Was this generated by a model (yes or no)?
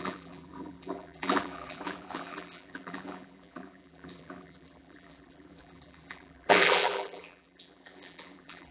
yes